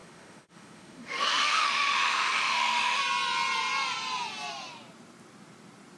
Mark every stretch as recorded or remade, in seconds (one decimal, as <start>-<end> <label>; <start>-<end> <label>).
0.0-3.0 remade; 3.0-6.0 recorded